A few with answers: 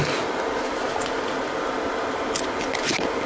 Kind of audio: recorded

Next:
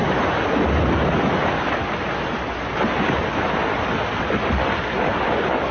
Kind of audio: remade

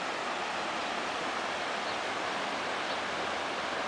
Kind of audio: remade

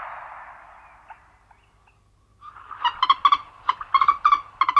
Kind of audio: recorded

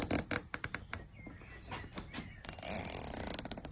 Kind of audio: recorded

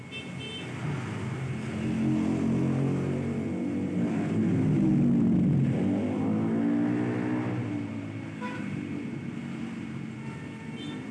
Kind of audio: recorded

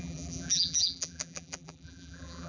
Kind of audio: remade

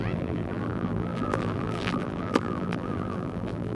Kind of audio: remade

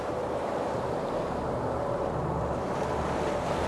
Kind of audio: remade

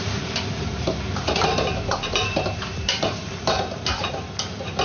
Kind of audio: remade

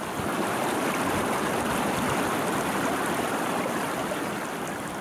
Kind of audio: recorded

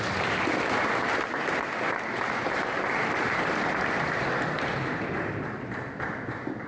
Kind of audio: recorded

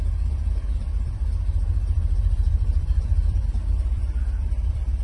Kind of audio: remade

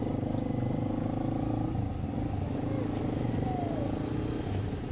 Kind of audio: recorded